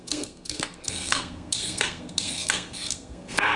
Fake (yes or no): yes